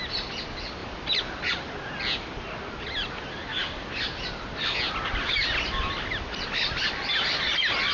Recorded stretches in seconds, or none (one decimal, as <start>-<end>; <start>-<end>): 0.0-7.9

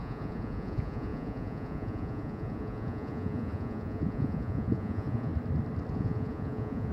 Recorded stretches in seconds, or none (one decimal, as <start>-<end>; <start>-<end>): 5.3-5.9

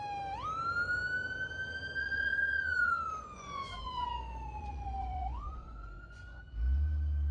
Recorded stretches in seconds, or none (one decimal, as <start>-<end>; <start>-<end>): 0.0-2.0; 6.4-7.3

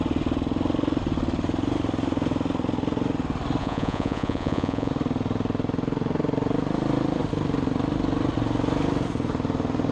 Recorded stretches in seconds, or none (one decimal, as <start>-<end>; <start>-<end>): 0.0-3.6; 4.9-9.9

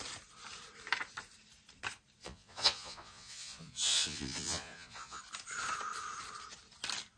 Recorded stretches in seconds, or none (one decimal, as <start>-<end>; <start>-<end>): 0.0-2.2; 5.2-7.2

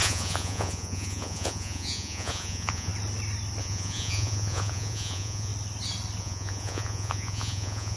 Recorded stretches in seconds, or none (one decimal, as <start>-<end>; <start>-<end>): 2.9-3.6; 5.5-6.2

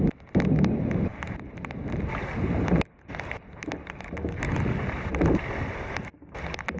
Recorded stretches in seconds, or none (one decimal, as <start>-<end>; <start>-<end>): 0.0-6.8

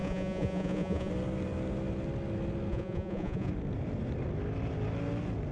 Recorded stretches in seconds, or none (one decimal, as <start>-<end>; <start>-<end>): 1.1-2.7; 3.5-5.5